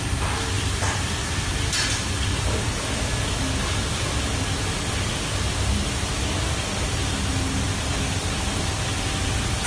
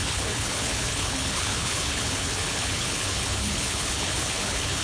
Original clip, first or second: first